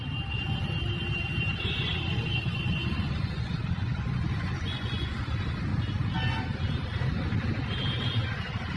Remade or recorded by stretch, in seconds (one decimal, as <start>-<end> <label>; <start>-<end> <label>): 0.0-1.5 recorded; 1.5-5.2 remade; 5.2-8.8 recorded